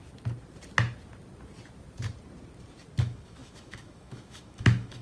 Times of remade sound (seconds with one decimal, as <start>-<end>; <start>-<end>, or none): 3.0-5.0